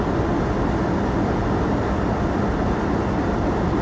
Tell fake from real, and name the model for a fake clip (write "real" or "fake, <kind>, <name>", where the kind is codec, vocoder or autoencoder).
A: real